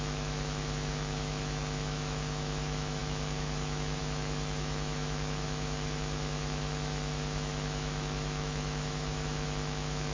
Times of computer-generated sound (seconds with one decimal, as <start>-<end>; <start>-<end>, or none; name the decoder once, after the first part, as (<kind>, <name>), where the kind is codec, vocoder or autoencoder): 0.0-10.1 (autoencoder, DAC-VAE)